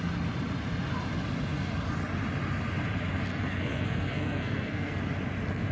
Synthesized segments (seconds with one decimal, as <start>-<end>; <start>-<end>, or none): 3.3-5.0